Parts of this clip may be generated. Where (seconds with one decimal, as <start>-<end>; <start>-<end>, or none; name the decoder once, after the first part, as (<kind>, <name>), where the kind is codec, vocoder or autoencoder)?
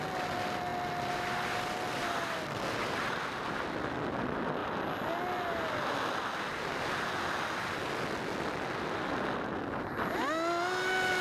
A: 0.7-3.1 (vocoder, BigVGAN v2)